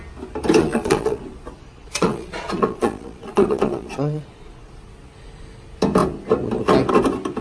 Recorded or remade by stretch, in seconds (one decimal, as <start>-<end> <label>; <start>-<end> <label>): 0.0-0.6 recorded; 0.6-1.2 remade; 1.2-1.6 recorded; 1.6-4.7 remade; 4.7-7.4 recorded